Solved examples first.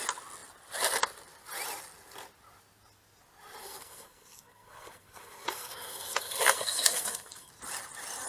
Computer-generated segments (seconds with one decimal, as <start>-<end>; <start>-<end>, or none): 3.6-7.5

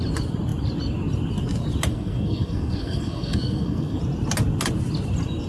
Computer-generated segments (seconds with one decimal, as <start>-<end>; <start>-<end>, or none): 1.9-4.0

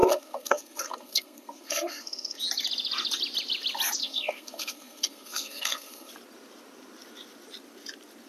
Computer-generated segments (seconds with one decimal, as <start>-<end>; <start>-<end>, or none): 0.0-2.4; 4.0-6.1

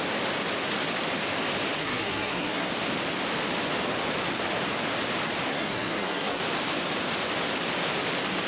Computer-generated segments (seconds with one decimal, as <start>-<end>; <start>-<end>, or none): 1.8-2.7; 5.5-6.4

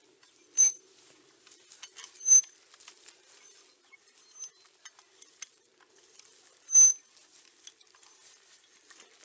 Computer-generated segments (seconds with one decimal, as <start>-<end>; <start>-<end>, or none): none